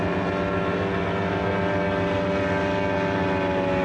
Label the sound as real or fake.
real